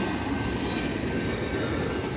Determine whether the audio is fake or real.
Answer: real